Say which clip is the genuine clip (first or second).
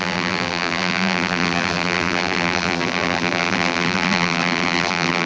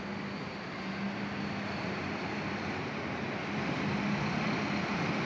second